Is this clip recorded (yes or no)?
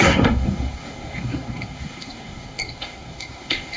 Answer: no